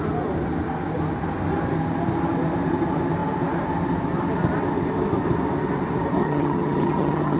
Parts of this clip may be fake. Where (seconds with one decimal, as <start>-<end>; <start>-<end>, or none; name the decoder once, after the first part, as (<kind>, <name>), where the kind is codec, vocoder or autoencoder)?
6.2-7.4 (vocoder, HiFi-GAN)